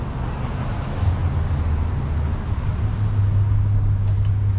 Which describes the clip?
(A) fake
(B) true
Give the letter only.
B